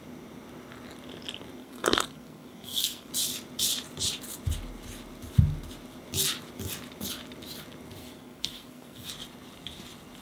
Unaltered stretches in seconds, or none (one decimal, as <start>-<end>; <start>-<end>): 0.0-1.6; 3.1-8.0; 9.1-10.2